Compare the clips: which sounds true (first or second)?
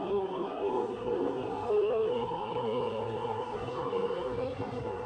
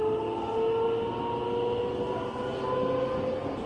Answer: second